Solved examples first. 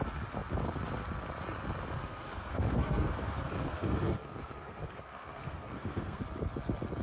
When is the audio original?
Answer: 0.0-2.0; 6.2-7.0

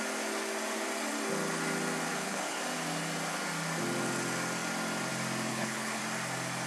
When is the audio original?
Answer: 0.0-2.1; 2.6-5.5; 6.0-6.7

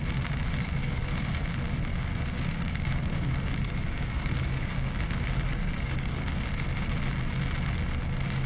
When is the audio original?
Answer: 0.0-0.8; 1.4-1.9; 5.0-5.5; 6.5-8.5